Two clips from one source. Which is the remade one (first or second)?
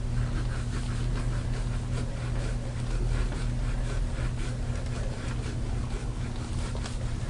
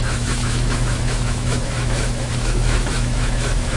second